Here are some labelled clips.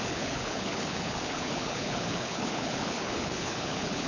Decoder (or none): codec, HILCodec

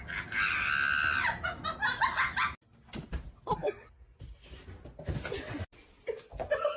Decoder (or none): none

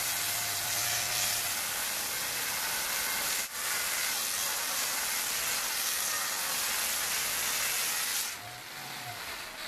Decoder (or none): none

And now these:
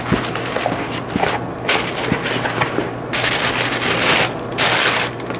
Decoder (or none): none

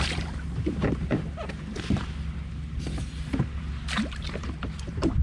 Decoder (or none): vocoder, BigVGAN v2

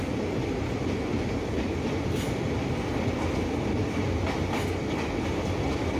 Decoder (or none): none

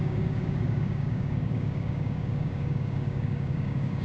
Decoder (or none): codec, DAC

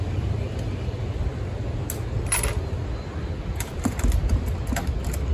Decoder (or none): none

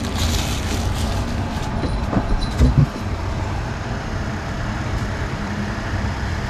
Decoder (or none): vocoder, BigVGAN v2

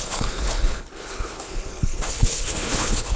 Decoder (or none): codec, HILCodec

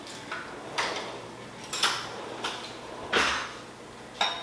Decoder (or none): none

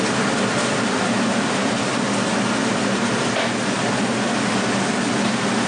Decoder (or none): none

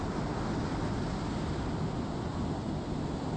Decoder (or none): none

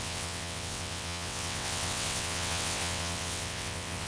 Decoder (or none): vocoder, WaveNeXt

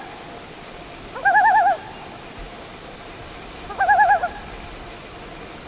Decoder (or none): none